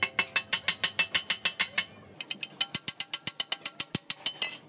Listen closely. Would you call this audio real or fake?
real